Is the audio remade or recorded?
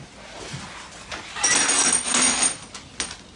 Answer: recorded